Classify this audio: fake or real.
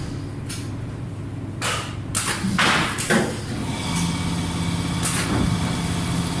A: real